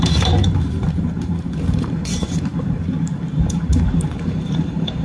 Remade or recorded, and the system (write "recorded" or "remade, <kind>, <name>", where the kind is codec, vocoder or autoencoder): remade, vocoder, BigVGAN v2